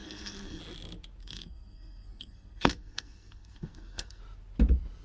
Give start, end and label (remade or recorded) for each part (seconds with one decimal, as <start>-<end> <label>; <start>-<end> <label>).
0.0-0.6 remade; 0.6-1.2 recorded; 1.2-4.2 remade; 4.2-5.0 recorded